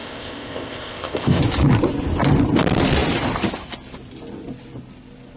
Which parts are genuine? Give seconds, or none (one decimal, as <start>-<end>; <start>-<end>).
1.4-5.4